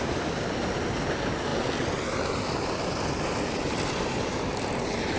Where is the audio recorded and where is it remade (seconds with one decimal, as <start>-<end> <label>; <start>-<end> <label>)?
0.0-5.2 recorded